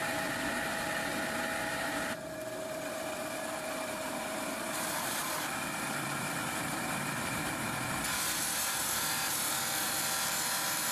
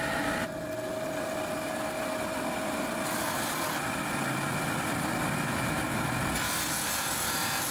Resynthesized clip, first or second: first